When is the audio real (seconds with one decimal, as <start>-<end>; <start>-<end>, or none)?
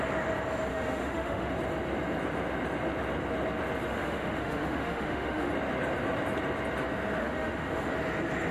0.0-0.7; 1.5-3.9; 5.5-7.2; 7.9-8.5